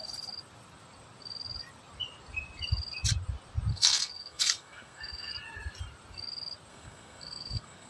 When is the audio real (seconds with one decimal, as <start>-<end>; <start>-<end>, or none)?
0.0-3.7; 5.3-6.7